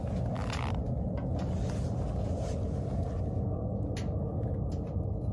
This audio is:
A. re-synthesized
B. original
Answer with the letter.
B